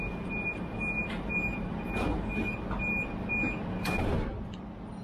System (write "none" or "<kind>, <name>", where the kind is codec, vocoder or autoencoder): none